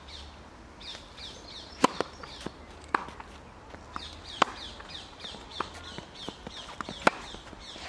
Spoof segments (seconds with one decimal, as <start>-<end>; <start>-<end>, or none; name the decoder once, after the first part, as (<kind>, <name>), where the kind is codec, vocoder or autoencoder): none